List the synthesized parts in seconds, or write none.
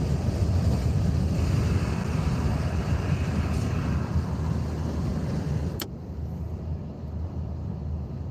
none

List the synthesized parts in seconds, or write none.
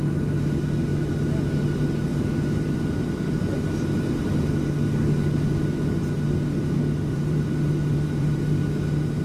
7.1-8.4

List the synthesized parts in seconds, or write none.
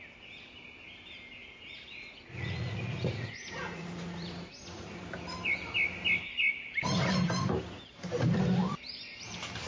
1.4-5.0